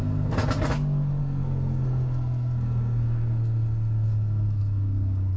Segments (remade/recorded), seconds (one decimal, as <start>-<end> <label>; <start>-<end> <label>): 0.0-0.4 remade; 0.4-1.2 recorded; 1.2-5.4 remade